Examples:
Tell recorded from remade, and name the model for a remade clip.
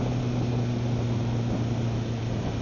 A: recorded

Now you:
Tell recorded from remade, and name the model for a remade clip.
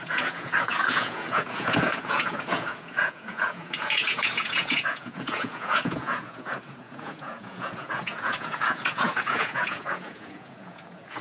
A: remade, vocoder, Vocos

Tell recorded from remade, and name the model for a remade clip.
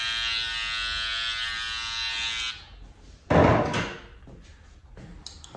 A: recorded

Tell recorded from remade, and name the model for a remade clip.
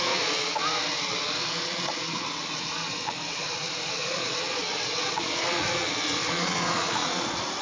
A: remade, vocoder, WaveNeXt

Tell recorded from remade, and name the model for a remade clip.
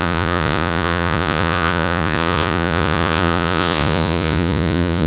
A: remade, vocoder, Vocos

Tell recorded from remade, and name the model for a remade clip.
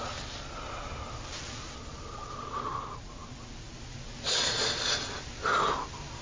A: recorded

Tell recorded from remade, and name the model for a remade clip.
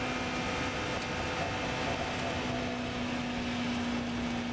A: recorded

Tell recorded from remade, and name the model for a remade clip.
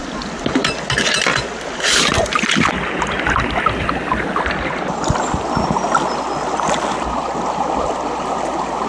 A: recorded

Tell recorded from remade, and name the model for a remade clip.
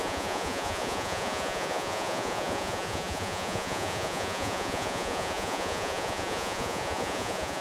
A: remade, vocoder, Vocos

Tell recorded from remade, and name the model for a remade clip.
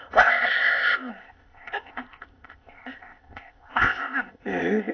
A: remade, codec, ZipCodec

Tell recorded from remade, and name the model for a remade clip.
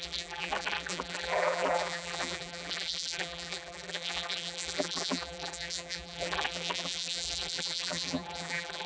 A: remade, vocoder, BigVGAN v2